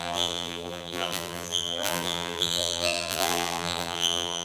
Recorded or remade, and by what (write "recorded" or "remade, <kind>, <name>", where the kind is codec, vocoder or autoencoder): remade, vocoder, BigVGAN v2